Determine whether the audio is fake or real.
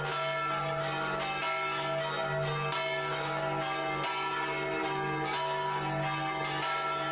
real